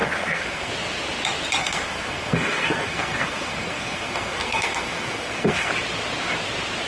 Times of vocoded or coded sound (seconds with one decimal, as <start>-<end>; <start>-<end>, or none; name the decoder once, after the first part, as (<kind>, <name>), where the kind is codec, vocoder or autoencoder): 0.0-0.7 (codec, SNAC); 1.6-5.7

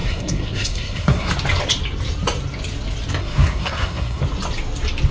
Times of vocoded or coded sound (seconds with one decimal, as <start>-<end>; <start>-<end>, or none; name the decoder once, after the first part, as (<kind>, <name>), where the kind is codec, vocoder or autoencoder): 0.0-1.3 (codec, SNAC); 3.2-4.2